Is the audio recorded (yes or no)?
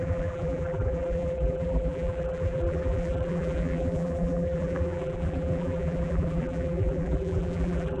no